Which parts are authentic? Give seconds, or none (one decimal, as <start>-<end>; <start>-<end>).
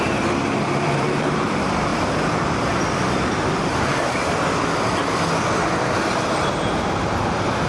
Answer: 1.9-6.5